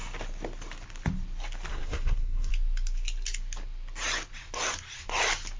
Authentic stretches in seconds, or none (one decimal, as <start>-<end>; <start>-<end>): 0.0-1.7; 2.5-5.6